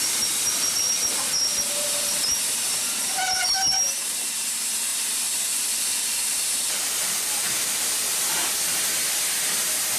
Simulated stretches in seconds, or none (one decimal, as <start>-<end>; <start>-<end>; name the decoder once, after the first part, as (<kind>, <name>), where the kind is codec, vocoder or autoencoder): 4.9-7.7 (vocoder, BigVGAN v2)